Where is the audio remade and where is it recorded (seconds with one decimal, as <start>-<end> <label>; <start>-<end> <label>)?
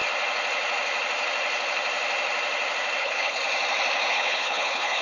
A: 0.0-3.0 recorded; 3.0-3.4 remade; 3.4-4.1 recorded; 4.1-5.0 remade